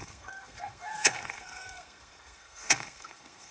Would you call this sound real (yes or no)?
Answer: no